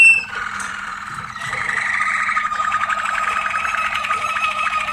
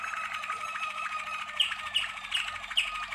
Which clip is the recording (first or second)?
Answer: second